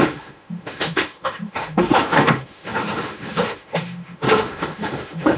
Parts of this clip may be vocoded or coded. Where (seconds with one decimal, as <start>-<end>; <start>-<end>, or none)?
0.0-5.4